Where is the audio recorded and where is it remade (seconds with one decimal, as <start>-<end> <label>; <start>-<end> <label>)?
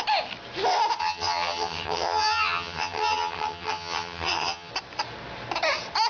0.0-1.0 recorded; 1.0-4.7 remade; 4.7-6.1 recorded